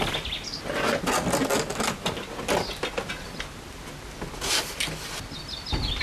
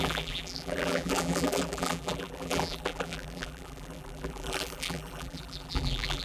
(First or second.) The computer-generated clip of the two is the second